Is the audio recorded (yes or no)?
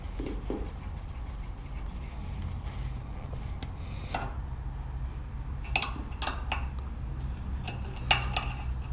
yes